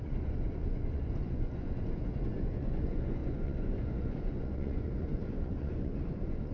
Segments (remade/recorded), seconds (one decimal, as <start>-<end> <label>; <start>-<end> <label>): 0.0-6.5 remade